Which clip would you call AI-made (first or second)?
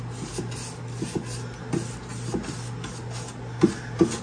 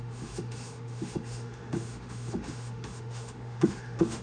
second